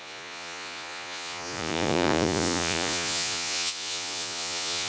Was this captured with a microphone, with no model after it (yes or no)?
no